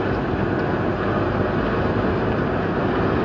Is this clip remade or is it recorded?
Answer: recorded